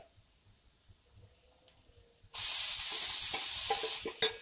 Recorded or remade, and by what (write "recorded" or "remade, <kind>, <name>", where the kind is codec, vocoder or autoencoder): recorded